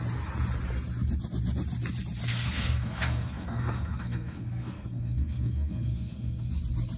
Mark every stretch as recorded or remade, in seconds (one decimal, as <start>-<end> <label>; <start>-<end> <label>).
0.0-2.3 recorded; 2.3-6.5 remade; 6.5-7.0 recorded

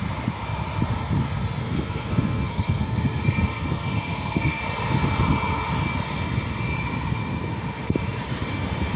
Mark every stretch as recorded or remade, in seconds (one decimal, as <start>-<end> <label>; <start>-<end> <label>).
0.0-1.6 recorded; 1.6-4.6 remade; 4.6-9.0 recorded